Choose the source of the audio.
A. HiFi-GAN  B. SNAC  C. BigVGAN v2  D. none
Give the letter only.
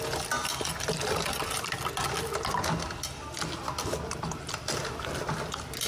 D